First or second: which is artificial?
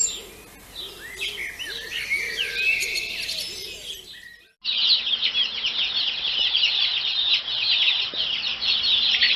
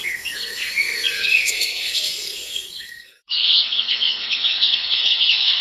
second